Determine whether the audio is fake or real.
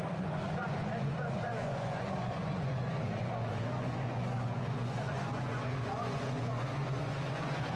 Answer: fake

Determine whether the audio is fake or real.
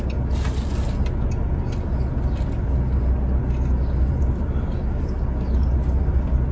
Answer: real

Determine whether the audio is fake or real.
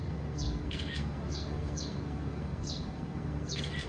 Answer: fake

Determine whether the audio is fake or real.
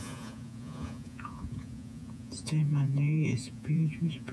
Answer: fake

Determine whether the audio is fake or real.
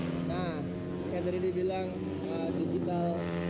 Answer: real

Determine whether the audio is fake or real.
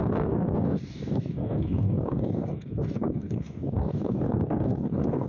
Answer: fake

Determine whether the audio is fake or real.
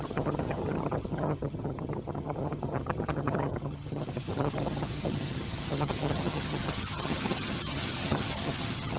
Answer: fake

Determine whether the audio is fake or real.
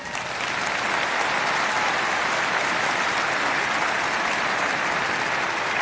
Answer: fake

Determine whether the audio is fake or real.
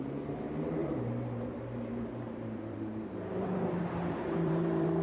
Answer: fake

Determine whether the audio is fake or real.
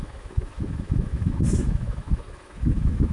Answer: fake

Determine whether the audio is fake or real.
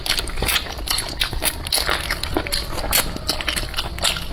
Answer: real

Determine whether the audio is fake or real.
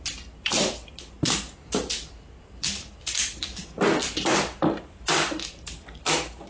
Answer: real